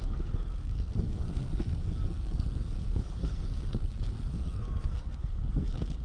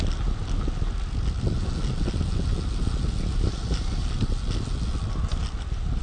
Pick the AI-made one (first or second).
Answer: first